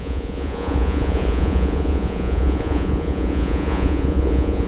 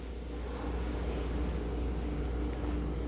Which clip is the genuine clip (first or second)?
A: second